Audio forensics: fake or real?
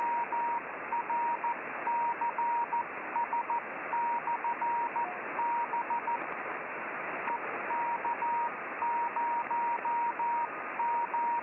real